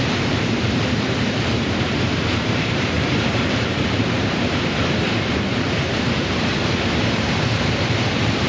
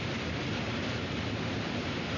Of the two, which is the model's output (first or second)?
first